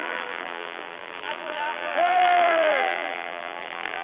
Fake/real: fake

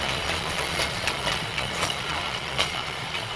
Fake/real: fake